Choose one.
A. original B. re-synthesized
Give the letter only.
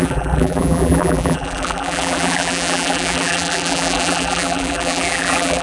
B